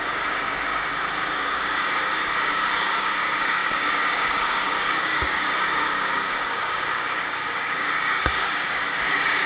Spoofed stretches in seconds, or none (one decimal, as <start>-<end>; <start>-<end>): 0.0-0.7; 1.3-9.5